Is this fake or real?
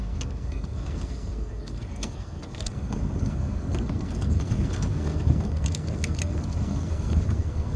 fake